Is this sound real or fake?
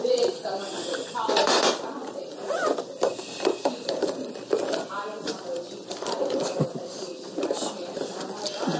fake